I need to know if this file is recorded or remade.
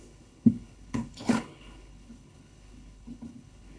remade